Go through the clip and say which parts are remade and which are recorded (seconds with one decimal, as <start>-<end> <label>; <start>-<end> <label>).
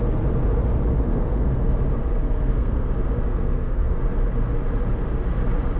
0.0-1.1 recorded; 1.1-1.7 remade; 1.7-2.2 recorded; 2.2-2.9 remade; 2.9-3.3 recorded; 3.3-4.0 remade; 4.0-5.8 recorded